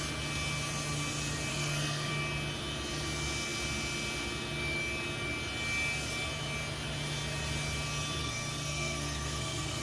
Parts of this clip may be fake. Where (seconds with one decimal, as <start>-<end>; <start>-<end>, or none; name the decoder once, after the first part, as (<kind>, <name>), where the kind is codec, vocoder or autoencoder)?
1.5-2.1 (codec, SNAC); 8.2-9.8